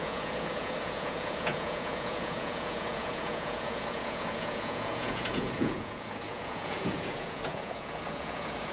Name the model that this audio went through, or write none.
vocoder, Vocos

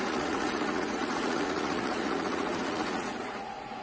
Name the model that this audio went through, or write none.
vocoder, Vocos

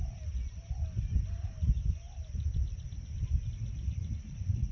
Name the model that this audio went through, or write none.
none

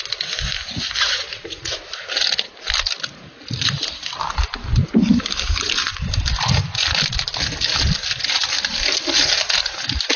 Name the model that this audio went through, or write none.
none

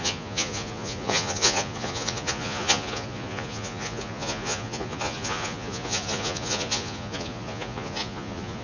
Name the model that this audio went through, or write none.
vocoder, Vocos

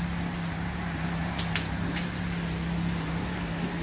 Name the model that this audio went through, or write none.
none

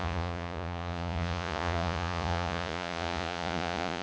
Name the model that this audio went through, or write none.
vocoder, Vocos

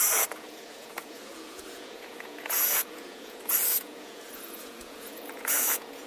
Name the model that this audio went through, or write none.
vocoder, Vocos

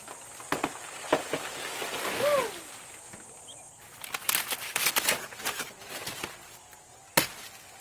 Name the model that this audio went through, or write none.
none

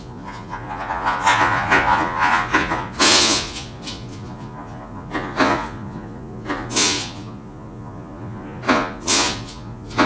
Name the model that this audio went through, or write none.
vocoder, Vocos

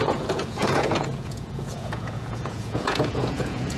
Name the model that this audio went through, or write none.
vocoder, Vocos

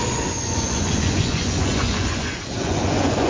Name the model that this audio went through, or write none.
vocoder, Vocos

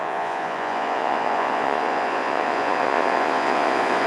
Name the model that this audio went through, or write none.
vocoder, Vocos